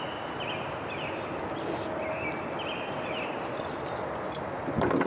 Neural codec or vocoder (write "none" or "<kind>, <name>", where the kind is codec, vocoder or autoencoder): none